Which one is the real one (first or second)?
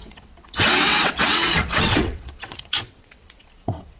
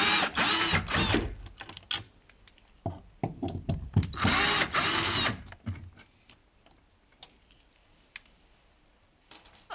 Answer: second